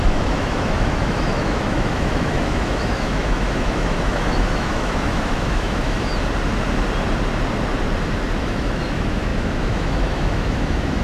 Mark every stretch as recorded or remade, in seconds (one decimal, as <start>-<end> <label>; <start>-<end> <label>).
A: 0.0-6.1 remade; 6.1-8.4 recorded; 8.4-11.0 remade